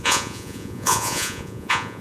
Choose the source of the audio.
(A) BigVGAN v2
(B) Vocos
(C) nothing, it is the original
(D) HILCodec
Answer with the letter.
B